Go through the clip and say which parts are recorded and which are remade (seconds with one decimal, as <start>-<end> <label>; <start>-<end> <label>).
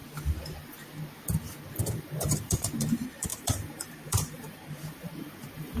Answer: 0.0-1.8 recorded; 1.8-5.8 remade